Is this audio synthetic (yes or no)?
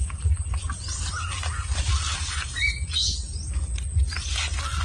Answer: no